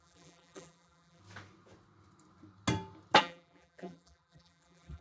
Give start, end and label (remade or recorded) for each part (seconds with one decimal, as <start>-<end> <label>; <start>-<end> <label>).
0.0-1.2 remade; 1.2-3.2 recorded; 3.2-5.0 remade